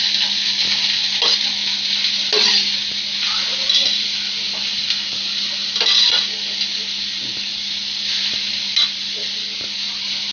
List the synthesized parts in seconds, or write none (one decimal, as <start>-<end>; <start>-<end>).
none